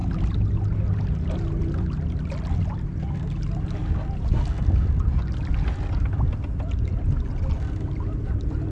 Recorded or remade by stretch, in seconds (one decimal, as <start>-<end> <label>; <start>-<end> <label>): 0.0-8.7 recorded